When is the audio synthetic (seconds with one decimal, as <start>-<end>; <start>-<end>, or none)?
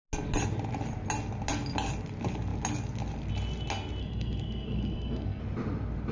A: 4.0-5.4